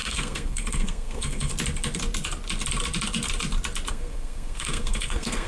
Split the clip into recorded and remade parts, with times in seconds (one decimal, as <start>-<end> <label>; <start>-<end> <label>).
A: 0.0-1.5 remade; 1.5-3.9 recorded; 3.9-5.5 remade